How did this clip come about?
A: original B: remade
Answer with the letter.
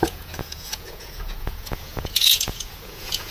B